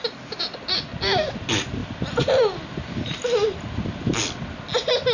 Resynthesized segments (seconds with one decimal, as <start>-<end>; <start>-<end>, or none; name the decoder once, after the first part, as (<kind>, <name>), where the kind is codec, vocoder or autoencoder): 1.8-4.2 (vocoder, BigVGAN v2)